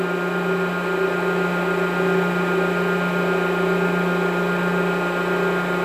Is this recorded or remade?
recorded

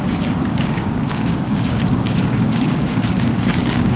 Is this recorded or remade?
remade